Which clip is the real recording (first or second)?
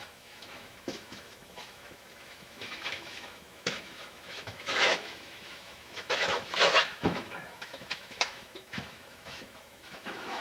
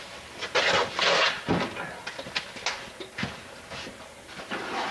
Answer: second